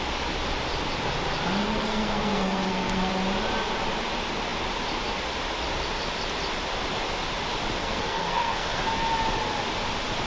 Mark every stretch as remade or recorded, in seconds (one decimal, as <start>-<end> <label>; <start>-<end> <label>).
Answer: 0.0-1.6 recorded; 1.6-3.1 remade; 3.1-7.8 recorded; 7.8-8.8 remade; 8.8-10.3 recorded